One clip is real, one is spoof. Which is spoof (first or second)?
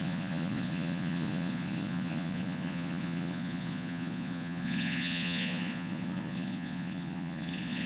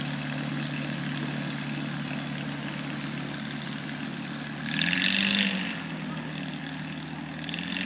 first